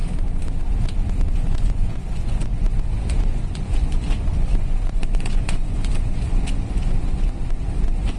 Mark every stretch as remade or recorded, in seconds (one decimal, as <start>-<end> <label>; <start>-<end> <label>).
0.0-1.6 recorded; 1.6-8.2 remade